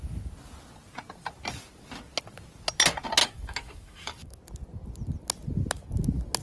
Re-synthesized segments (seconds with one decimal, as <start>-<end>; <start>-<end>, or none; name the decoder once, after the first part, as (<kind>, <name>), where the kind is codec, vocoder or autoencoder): 3.2-4.4 (autoencoder, DAC-VAE)